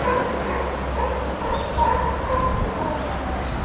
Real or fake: real